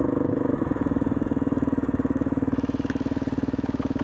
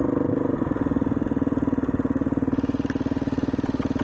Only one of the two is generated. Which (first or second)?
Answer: first